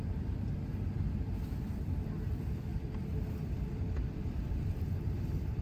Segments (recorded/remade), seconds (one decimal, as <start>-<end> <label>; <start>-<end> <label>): 0.0-5.6 remade